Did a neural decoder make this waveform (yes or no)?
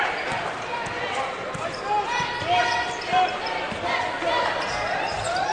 no